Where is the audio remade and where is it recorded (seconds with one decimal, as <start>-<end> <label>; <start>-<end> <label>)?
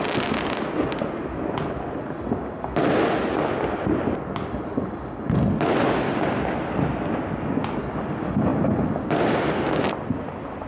0.0-10.7 recorded